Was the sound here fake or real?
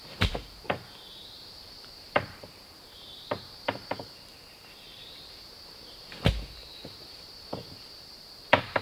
fake